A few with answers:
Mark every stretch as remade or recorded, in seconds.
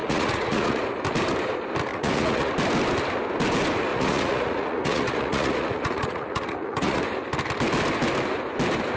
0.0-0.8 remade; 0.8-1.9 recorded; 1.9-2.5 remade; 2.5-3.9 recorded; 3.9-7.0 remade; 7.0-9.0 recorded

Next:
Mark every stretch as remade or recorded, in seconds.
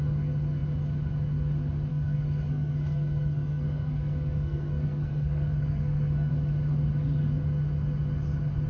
0.0-1.9 recorded; 1.9-6.3 remade; 6.3-8.7 recorded